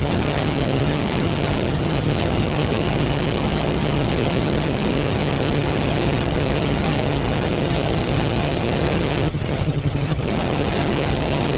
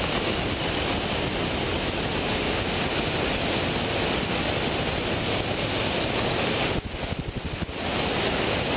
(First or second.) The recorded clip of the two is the second